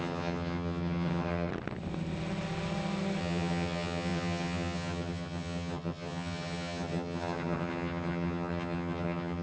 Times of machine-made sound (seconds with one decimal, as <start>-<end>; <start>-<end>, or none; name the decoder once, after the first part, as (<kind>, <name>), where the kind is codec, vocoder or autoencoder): 0.0-1.5 (vocoder, HiFi-GAN); 3.2-9.4